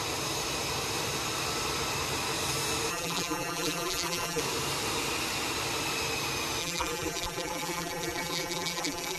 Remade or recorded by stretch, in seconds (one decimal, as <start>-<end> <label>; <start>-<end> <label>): 0.0-2.9 recorded; 2.9-4.4 remade; 4.4-6.6 recorded; 6.6-9.2 remade